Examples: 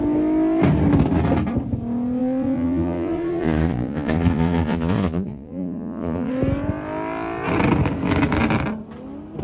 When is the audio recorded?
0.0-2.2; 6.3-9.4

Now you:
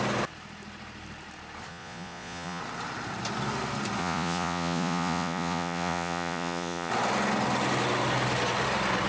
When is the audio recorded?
0.0-1.7; 2.6-4.0; 6.9-9.1

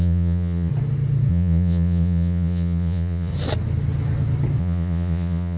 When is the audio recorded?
0.7-1.3; 3.3-4.6

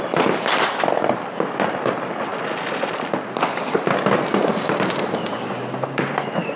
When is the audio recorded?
0.0-6.6

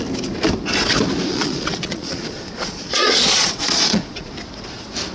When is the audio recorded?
0.0-1.3; 4.3-5.1

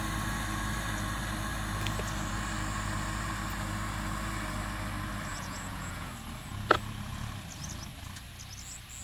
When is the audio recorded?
0.0-5.3; 6.1-9.0

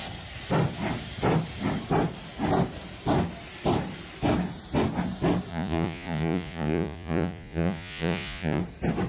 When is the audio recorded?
0.0-5.5; 8.6-9.1

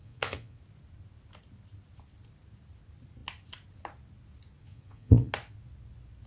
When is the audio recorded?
0.6-4.6; 5.3-6.3